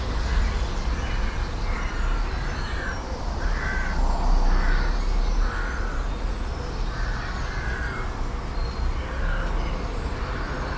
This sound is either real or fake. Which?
real